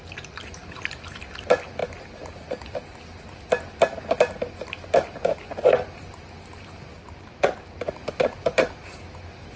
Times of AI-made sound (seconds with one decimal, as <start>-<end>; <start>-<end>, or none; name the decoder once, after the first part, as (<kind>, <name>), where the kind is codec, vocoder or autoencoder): none